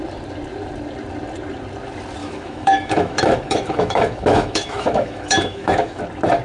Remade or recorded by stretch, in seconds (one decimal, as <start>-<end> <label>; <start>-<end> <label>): 0.0-2.2 recorded; 2.2-6.0 remade; 6.0-6.4 recorded